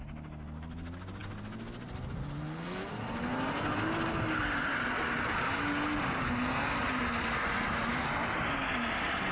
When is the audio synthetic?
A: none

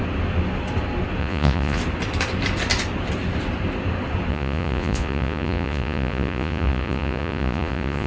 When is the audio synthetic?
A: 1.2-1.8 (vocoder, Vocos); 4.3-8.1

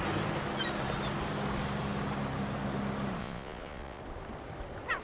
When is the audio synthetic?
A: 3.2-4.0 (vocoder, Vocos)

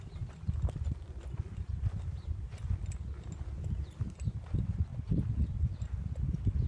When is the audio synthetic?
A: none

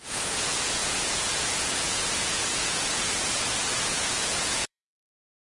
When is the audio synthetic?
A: 0.0-5.6 (vocoder, Vocos)

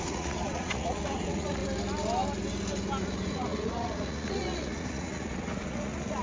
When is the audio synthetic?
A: 0.0-1.6 (vocoder, Vocos); 3.0-6.2